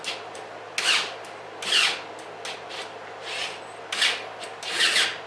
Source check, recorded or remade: recorded